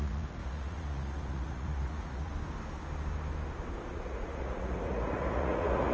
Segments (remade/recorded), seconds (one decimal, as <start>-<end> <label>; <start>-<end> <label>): 0.0-2.3 remade; 2.3-3.9 recorded; 3.9-5.9 remade